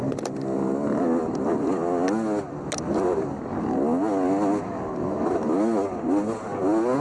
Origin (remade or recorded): recorded